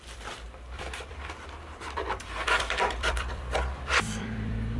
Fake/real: fake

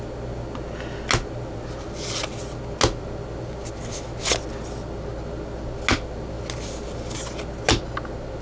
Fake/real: real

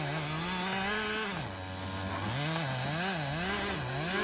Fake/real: real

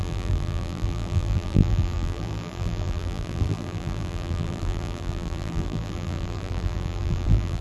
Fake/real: fake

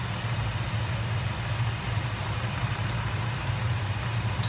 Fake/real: real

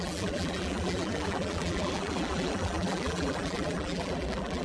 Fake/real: fake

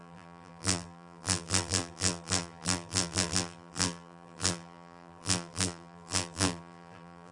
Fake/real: fake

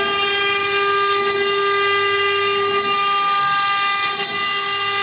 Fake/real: real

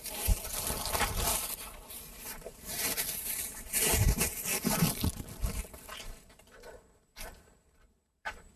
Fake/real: fake